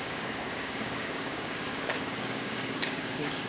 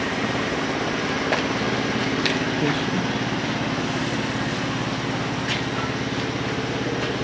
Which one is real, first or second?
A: second